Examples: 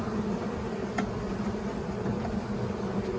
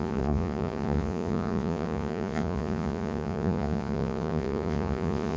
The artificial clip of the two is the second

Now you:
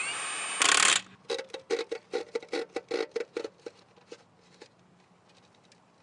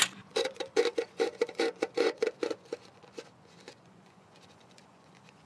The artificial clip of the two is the second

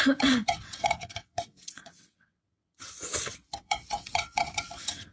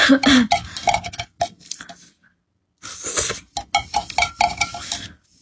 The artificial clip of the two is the first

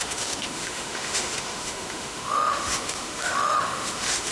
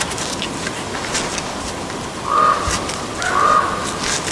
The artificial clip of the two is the first